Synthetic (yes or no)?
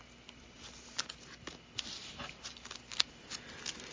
no